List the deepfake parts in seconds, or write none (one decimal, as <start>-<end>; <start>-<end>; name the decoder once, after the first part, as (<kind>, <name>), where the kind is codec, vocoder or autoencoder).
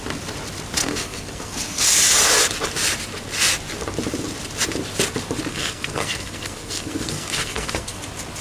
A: 0.8-1.8 (codec, SNAC); 5.5-8.0